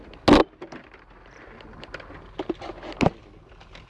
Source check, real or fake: real